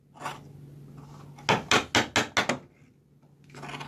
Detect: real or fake real